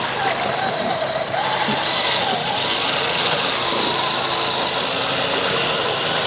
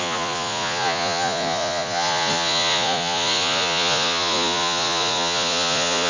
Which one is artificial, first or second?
second